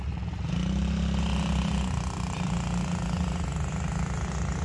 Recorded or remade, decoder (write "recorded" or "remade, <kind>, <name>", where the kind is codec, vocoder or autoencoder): recorded